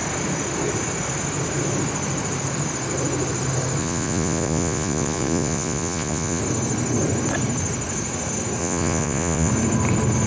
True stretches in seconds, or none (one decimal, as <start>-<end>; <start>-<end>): 0.0-3.8; 6.4-8.6; 9.5-10.3